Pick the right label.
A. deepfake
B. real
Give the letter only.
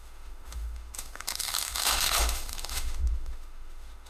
A